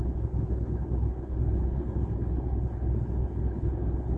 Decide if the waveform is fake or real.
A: fake